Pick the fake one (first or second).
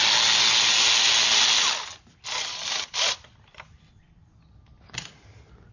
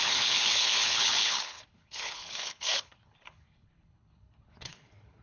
second